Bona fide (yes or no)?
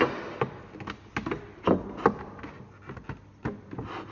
yes